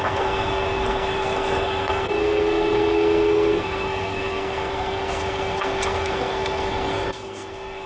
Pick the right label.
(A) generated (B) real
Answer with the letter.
A